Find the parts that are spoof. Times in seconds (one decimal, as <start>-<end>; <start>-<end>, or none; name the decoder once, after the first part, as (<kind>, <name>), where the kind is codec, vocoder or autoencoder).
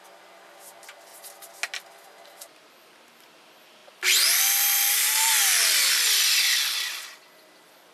none